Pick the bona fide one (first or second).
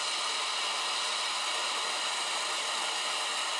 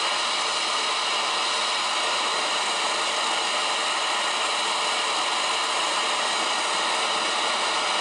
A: second